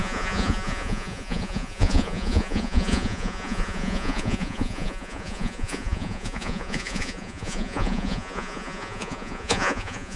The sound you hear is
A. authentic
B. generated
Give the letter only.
B